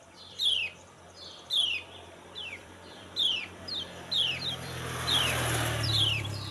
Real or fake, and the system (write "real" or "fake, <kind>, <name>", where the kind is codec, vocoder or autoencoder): fake, vocoder, BigVGAN v2